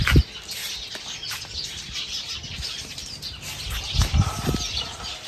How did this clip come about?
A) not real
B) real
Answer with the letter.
B